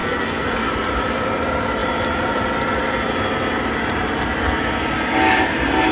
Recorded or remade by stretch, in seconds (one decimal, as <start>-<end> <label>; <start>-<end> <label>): 0.0-0.7 remade; 0.7-5.9 recorded